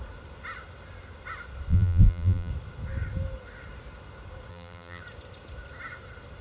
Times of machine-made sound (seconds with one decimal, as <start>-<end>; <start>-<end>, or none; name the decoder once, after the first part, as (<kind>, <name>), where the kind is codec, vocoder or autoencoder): 1.7-2.5 (vocoder, BigVGAN v2); 4.5-5.0